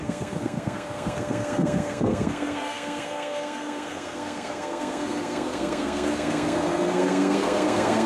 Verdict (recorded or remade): remade